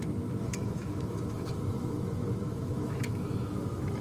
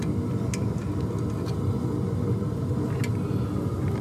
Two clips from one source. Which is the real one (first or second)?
second